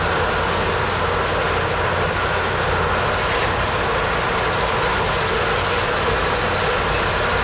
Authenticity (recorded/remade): recorded